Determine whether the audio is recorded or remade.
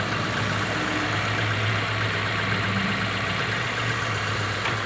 recorded